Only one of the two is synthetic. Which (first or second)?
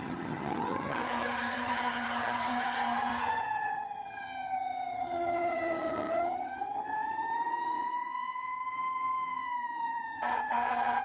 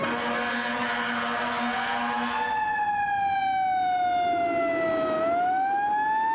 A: first